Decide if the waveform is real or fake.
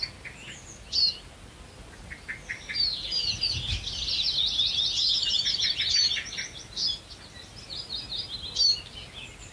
real